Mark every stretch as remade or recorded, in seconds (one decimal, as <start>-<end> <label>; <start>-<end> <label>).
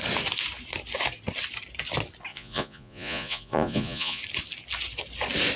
0.0-2.3 recorded; 2.3-4.2 remade; 4.2-5.6 recorded